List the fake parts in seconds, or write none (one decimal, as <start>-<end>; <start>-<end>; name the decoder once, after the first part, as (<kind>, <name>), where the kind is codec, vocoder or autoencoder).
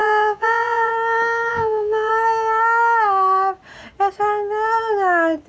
0.0-0.9 (vocoder, Vocos); 1.5-2.1